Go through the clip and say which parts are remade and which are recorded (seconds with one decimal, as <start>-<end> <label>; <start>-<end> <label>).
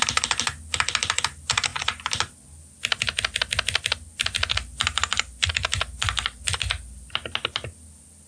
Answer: 0.0-8.3 recorded